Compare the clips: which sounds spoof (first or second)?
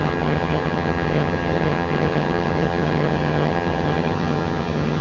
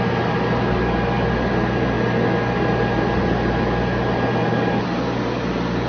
first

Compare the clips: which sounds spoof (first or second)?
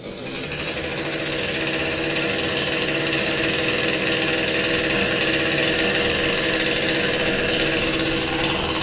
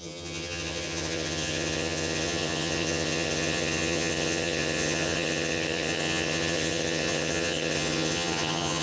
second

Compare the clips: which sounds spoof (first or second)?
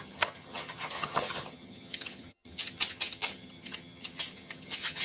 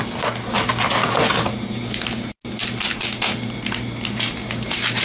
first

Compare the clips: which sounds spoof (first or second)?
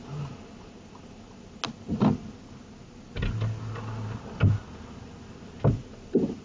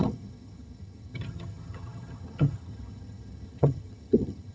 second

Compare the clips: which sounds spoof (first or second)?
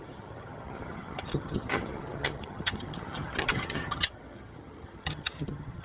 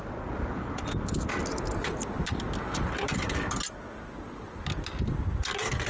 first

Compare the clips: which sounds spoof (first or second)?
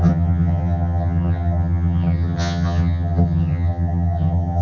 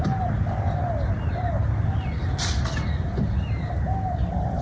first